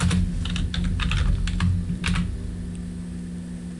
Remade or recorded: recorded